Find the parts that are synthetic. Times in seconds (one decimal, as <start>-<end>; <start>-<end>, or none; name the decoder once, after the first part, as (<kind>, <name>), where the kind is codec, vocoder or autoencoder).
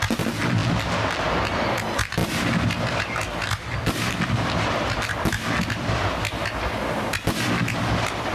none